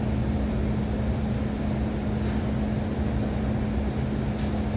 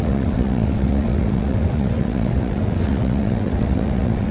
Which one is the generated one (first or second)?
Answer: second